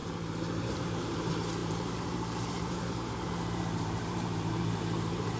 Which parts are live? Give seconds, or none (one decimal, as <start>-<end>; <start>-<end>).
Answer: none